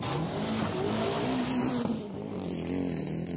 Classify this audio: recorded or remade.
recorded